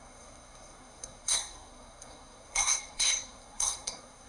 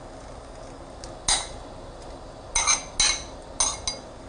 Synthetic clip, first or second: first